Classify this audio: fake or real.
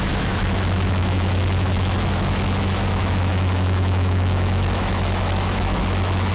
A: fake